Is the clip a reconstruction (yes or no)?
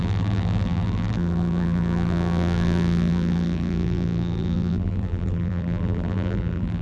yes